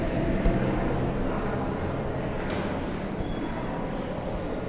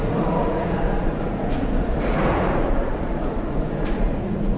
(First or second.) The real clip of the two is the first